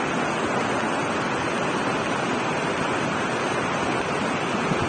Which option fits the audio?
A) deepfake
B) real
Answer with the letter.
B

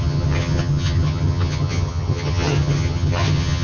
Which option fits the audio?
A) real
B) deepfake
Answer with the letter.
B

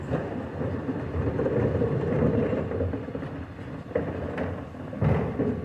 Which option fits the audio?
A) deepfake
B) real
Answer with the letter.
B